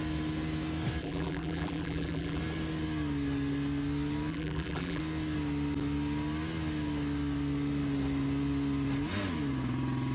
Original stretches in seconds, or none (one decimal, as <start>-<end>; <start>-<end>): 0.0-1.0; 2.4-4.3; 5.0-10.1